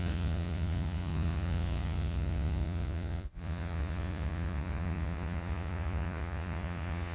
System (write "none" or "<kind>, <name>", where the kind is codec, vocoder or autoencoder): vocoder, Vocos